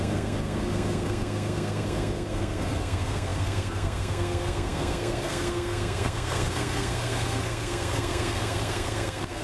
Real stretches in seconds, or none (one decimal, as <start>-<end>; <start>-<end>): none